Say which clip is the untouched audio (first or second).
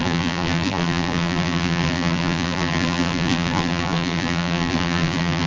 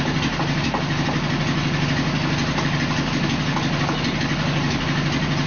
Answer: second